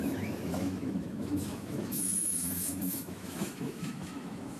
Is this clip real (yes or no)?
no